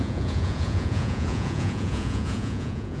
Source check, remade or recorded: remade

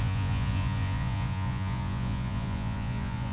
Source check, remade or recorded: remade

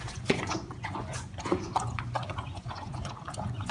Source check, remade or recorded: remade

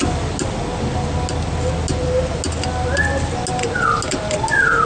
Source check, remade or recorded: recorded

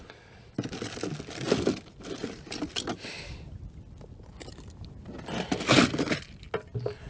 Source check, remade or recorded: recorded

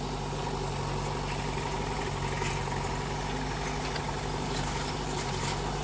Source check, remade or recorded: recorded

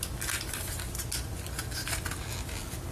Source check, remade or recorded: recorded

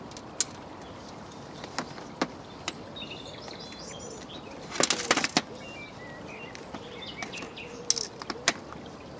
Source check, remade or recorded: recorded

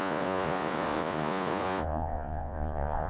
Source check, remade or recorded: remade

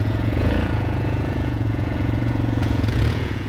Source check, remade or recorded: remade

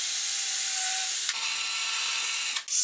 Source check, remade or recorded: recorded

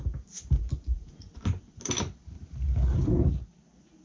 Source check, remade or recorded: recorded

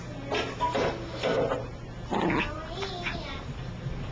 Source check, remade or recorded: recorded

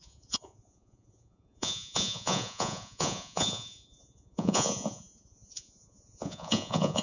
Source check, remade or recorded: remade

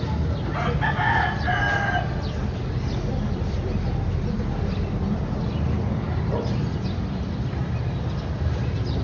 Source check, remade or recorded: recorded